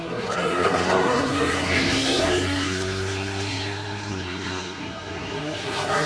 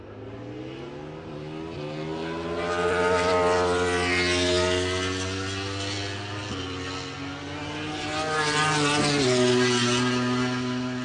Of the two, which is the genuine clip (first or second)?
second